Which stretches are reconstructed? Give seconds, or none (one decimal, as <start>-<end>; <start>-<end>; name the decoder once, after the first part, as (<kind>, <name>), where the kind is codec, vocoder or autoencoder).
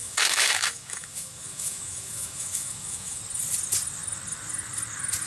0.0-3.2 (autoencoder, DAC-VAE)